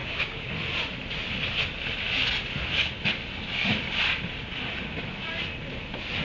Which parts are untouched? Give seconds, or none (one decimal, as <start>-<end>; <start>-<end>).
0.5-6.2